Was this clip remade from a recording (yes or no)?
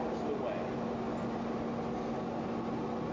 no